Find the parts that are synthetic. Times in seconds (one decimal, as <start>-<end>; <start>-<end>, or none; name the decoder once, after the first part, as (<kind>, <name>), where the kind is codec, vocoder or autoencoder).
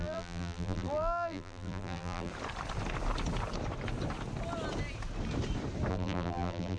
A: 0.0-2.3 (vocoder, BigVGAN v2); 5.9-6.8